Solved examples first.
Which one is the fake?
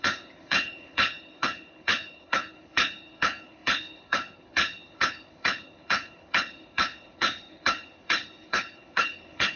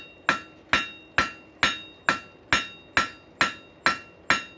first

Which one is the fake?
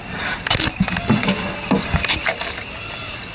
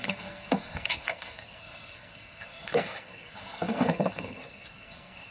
second